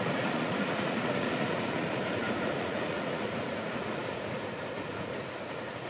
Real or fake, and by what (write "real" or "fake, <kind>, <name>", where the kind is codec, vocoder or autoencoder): fake, vocoder, Vocos